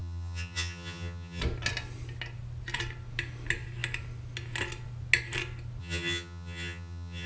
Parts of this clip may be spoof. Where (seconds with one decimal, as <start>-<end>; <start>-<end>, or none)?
0.0-1.4; 5.8-7.3